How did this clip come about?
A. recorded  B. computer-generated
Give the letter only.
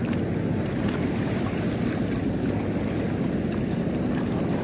A